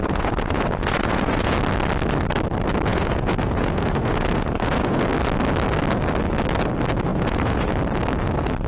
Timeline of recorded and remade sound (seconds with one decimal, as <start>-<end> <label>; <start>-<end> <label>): 0.0-1.5 remade; 1.5-2.9 recorded; 2.9-5.0 remade; 5.0-7.1 recorded; 7.1-7.7 remade; 7.7-8.7 recorded